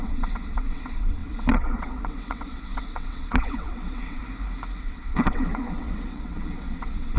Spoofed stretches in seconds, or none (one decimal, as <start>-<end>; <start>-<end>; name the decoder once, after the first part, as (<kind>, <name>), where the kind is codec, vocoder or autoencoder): 0.0-4.2 (vocoder, WaveNeXt); 4.8-7.2